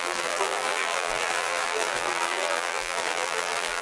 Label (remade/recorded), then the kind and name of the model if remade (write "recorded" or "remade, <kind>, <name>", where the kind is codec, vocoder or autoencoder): remade, vocoder, BigVGAN v2